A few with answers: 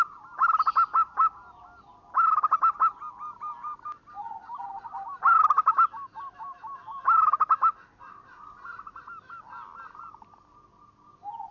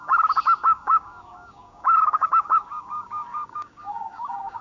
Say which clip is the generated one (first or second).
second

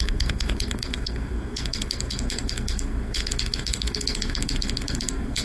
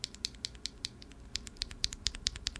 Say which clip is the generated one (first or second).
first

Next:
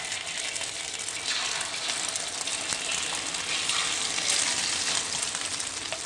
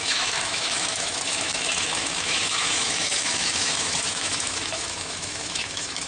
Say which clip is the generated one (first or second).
second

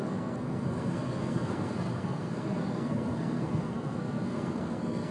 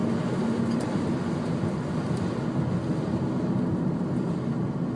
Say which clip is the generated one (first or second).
first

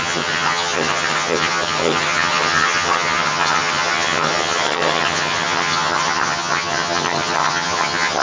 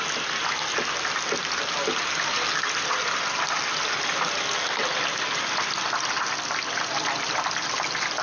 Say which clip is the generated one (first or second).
first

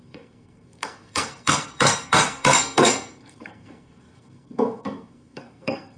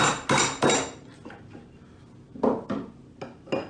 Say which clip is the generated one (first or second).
first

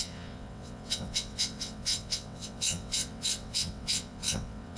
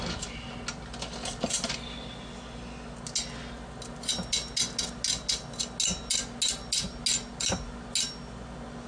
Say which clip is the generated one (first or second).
first